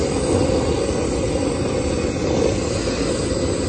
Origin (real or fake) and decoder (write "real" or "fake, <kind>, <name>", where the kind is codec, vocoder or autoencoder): real